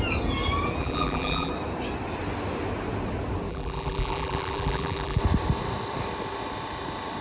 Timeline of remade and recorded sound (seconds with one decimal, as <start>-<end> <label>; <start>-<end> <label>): 0.0-0.8 recorded; 0.8-1.5 remade; 1.5-3.5 recorded; 3.5-5.2 remade; 5.2-7.2 recorded